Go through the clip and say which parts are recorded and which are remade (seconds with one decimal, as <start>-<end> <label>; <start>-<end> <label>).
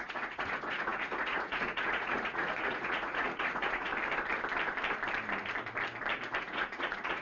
0.0-3.9 remade; 3.9-6.4 recorded; 6.4-7.2 remade